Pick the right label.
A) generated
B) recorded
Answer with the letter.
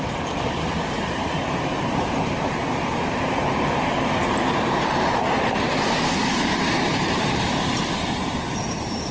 A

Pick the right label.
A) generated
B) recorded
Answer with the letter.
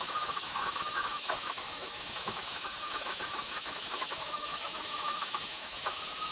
A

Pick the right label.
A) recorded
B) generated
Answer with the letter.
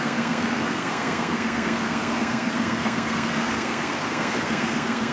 B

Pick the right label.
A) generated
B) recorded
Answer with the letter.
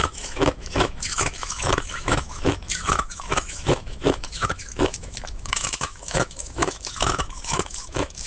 A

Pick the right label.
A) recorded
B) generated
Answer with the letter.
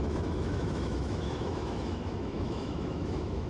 B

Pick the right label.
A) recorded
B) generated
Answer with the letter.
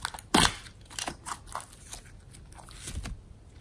A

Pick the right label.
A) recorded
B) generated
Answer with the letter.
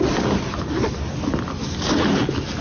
A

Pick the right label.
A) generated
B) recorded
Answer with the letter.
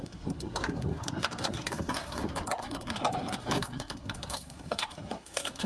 A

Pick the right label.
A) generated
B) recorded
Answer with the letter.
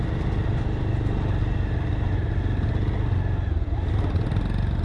B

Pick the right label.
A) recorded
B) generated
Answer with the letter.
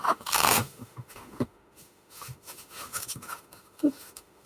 B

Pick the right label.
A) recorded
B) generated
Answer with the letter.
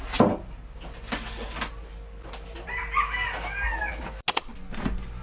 A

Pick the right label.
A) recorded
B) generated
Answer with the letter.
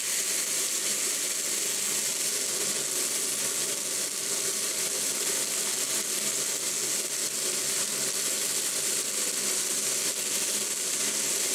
A